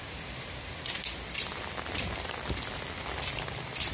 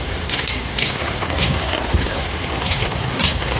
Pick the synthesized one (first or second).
second